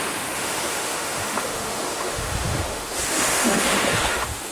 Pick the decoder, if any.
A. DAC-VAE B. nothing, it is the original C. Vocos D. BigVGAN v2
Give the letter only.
A